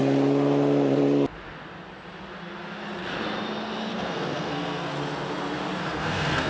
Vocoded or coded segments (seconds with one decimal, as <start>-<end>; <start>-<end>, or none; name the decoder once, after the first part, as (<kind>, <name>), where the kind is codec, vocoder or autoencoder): 3.9-4.9 (codec, SNAC); 5.8-6.5